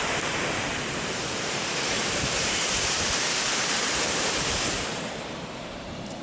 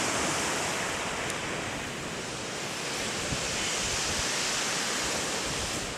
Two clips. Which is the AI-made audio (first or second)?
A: first